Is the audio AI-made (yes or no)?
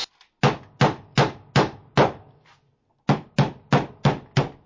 no